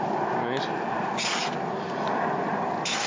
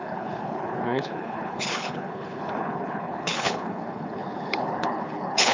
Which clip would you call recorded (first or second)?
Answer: first